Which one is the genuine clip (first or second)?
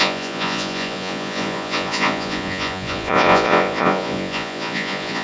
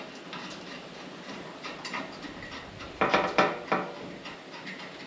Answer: second